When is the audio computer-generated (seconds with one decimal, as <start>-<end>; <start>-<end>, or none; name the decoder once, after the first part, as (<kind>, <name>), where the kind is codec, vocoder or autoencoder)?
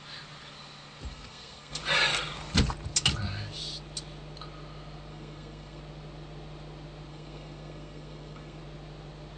1.1-1.8 (codec, SNAC); 5.1-5.8; 7.1-8.6